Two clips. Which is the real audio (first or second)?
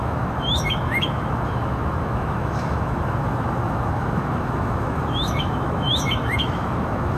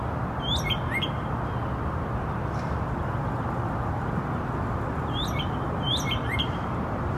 second